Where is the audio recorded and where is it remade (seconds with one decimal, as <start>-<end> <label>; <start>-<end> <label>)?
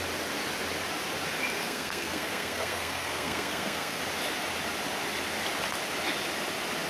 0.0-1.6 recorded; 1.6-4.0 remade; 4.0-6.9 recorded